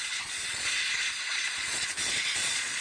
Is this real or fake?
fake